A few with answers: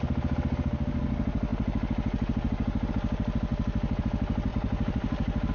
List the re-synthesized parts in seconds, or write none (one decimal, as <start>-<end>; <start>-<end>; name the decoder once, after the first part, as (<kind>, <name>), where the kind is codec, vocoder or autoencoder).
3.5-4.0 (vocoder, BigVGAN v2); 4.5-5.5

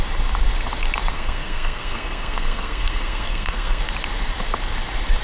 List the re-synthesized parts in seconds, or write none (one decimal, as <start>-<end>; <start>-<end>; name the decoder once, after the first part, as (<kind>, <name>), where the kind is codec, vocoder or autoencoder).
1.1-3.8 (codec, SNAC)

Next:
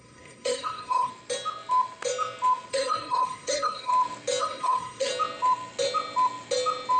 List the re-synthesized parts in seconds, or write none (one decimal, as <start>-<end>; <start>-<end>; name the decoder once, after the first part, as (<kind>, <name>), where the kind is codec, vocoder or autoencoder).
0.0-1.1 (codec, SNAC); 2.7-3.9; 4.4-5.1

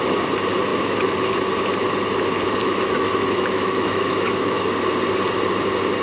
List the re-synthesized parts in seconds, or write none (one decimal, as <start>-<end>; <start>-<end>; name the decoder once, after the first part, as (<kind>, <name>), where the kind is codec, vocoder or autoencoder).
0.7-1.3 (autoencoder, DAC-VAE); 2.6-4.6

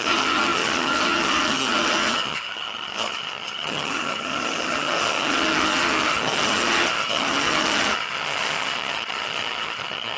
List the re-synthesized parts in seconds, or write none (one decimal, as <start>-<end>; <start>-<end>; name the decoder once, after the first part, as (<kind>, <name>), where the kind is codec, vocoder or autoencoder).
0.0-10.2 (vocoder, HiFi-GAN)

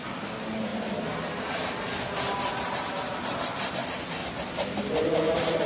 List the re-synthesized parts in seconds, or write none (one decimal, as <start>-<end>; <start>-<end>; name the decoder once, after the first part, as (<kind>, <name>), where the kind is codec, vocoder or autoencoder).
none

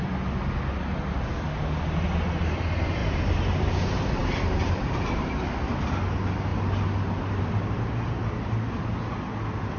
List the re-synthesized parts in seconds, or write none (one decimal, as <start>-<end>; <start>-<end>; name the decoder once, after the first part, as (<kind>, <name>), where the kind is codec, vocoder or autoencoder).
3.0-3.7 (vocoder, BigVGAN v2); 4.2-5.3; 6.5-7.5